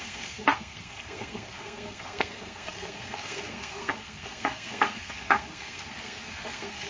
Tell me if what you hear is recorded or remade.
remade